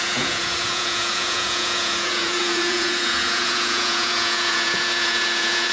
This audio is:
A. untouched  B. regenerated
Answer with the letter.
B